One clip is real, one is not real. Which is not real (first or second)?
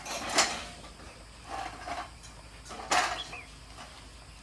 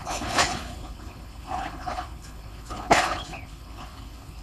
second